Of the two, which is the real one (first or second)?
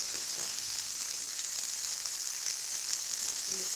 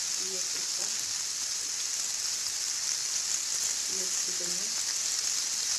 second